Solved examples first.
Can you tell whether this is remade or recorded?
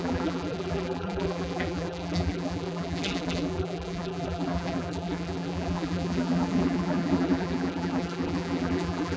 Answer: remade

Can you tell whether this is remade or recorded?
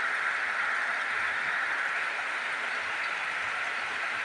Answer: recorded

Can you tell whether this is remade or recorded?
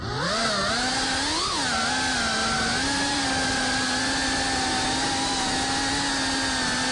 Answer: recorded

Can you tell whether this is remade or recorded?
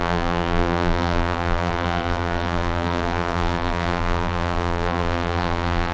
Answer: remade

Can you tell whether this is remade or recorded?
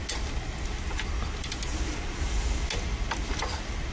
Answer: recorded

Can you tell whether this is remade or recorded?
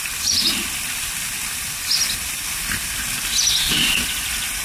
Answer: recorded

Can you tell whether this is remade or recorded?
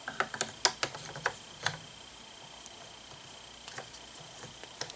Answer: recorded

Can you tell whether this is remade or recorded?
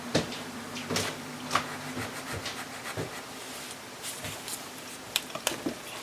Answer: remade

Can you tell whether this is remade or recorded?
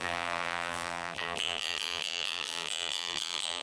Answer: remade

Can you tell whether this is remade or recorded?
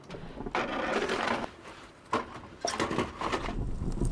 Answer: remade